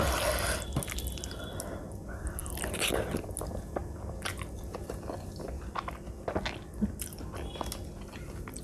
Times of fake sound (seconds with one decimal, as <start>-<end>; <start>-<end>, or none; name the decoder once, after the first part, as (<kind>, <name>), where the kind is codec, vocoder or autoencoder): none